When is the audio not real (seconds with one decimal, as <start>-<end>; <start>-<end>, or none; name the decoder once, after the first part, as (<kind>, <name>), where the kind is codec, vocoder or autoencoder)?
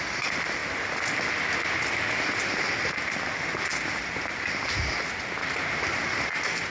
5.4-6.3 (vocoder, BigVGAN v2)